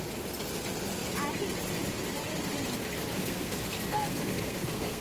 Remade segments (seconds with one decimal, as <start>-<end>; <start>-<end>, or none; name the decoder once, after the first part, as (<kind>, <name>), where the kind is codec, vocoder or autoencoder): 3.2-5.0 (codec, SNAC)